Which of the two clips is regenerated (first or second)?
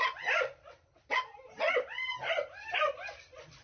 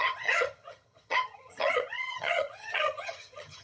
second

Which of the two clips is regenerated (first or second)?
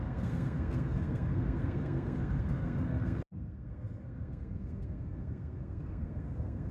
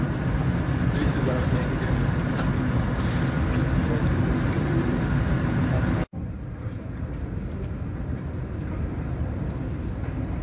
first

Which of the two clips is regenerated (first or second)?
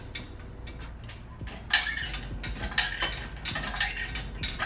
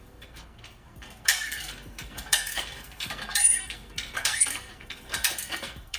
second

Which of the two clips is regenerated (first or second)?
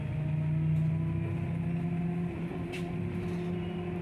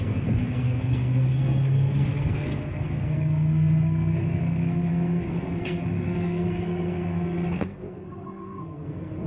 second